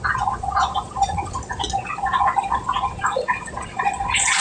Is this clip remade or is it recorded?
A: remade